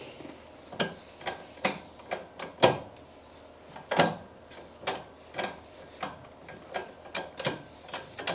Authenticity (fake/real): real